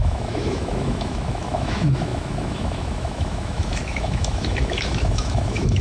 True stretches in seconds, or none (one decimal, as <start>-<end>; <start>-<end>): none